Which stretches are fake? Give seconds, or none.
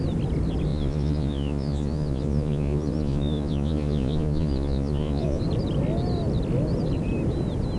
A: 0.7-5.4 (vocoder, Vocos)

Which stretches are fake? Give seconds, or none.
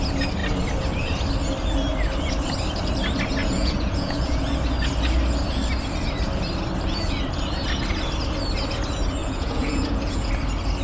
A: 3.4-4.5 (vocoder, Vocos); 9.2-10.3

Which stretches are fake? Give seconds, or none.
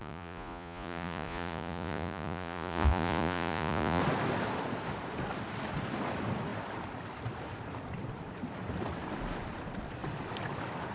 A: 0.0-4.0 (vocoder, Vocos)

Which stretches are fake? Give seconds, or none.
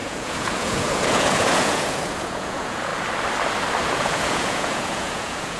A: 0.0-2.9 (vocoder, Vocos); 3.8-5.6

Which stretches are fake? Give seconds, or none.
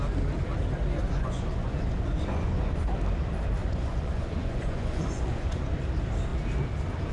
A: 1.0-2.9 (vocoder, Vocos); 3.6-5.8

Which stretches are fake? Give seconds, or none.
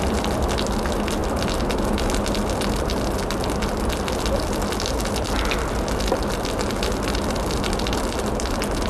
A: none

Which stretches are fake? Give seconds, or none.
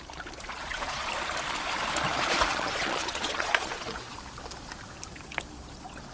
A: 0.6-1.1 (vocoder, Vocos); 2.5-4.2